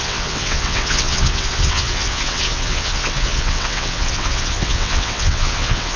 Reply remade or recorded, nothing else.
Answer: remade